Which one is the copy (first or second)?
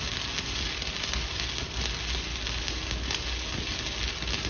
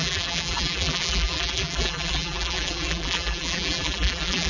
second